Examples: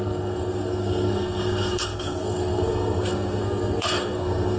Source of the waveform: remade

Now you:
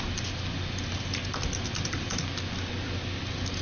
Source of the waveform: recorded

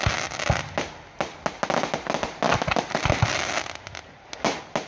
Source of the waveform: recorded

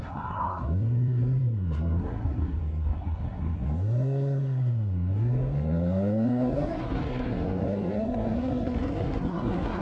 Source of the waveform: remade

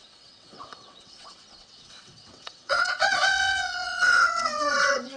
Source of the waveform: remade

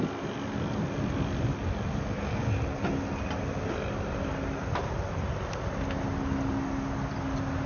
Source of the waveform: recorded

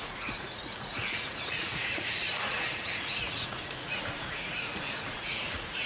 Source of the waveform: remade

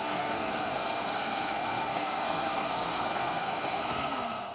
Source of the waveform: remade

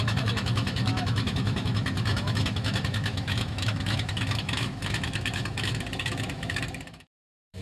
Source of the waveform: remade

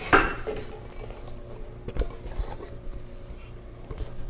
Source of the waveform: recorded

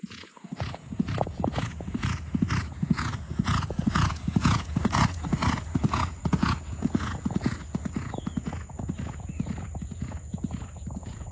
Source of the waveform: remade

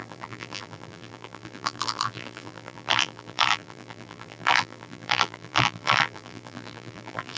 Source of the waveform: remade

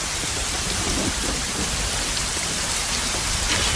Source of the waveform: recorded